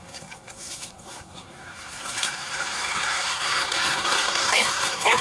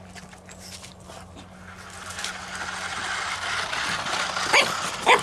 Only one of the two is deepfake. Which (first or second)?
first